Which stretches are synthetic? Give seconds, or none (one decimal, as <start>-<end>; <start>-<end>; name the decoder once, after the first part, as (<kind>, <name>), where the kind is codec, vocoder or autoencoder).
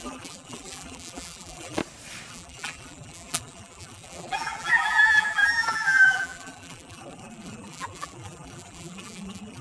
0.0-1.8 (vocoder, BigVGAN v2); 2.3-9.6